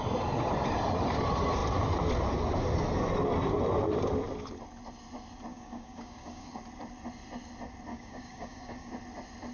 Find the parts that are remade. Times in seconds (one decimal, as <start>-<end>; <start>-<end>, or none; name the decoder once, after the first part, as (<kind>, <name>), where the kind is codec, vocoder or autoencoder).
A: 5.5-6.6 (codec, DAC); 7.9-8.9